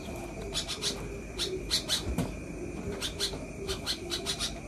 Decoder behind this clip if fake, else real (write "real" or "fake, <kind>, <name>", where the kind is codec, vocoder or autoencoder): fake, vocoder, BigVGAN v2